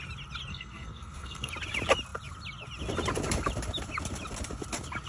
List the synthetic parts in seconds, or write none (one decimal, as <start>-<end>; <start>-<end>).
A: 0.5-1.5